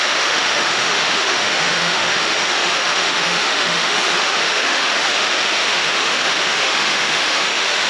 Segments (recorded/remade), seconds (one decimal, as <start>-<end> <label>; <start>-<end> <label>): 0.0-7.9 remade

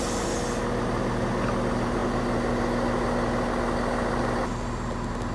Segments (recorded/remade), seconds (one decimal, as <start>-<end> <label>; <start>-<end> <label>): 0.0-5.3 recorded

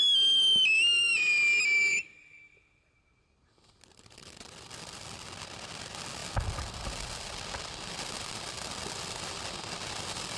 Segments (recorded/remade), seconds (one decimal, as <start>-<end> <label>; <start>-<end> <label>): 0.0-10.4 recorded

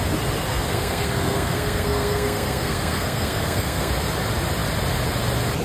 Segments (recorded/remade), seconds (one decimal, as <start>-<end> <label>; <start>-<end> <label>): 0.0-0.5 recorded; 0.5-3.9 remade; 3.9-5.6 recorded

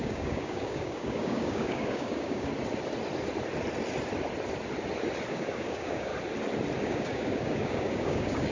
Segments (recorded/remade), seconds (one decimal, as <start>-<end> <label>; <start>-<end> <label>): 0.0-2.5 remade; 2.5-5.3 recorded; 5.3-6.1 remade; 6.1-6.8 recorded; 6.8-8.5 remade

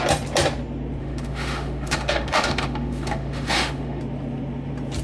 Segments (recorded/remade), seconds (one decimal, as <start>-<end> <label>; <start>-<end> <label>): 0.0-1.0 recorded; 1.0-4.0 remade; 4.0-5.0 recorded

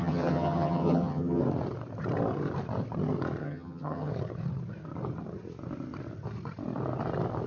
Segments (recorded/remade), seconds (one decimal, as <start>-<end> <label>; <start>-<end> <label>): 0.0-1.4 remade; 1.4-3.4 recorded; 3.4-4.1 remade; 4.1-7.5 recorded